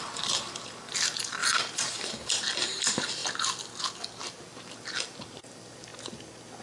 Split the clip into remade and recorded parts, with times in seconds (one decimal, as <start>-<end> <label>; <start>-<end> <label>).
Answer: 0.0-3.2 remade; 3.2-4.5 recorded; 4.5-5.9 remade; 5.9-6.6 recorded